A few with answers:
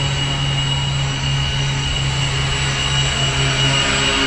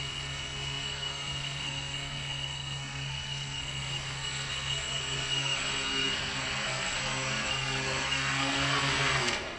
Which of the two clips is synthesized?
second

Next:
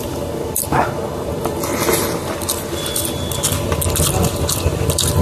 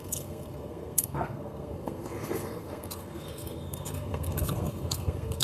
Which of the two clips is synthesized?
second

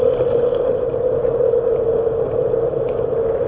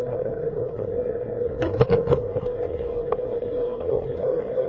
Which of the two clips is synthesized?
second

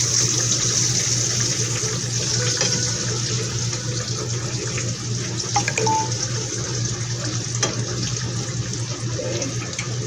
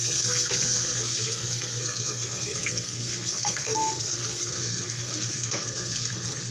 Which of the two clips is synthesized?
second